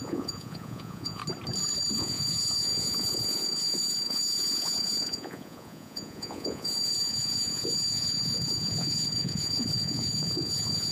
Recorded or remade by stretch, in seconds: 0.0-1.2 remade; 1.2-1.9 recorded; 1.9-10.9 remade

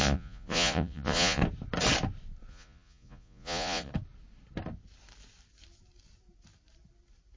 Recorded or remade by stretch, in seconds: 0.0-1.4 remade; 1.4-2.5 recorded; 2.5-3.9 remade; 3.9-7.4 recorded

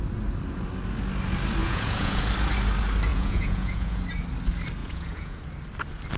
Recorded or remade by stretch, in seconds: 0.0-1.6 recorded; 1.6-2.2 remade; 2.2-3.1 recorded; 3.1-4.0 remade; 4.0-4.8 recorded; 4.8-5.4 remade; 5.4-6.2 recorded

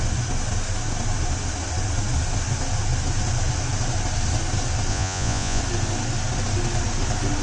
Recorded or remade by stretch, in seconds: 0.0-4.9 recorded; 4.9-5.6 remade; 5.6-7.4 recorded